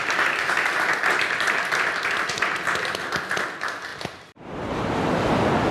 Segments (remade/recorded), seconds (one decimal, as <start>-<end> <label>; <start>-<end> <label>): 0.0-3.9 recorded; 3.9-4.8 remade; 4.8-5.7 recorded